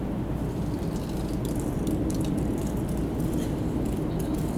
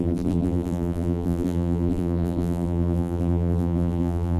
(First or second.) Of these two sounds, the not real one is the second